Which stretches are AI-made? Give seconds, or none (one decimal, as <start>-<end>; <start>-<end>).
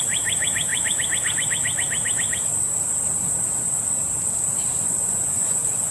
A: 4.8-5.9